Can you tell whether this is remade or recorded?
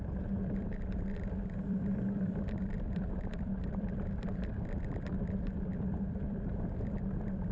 remade